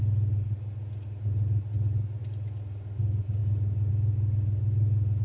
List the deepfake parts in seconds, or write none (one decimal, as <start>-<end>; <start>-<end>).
2.2-3.0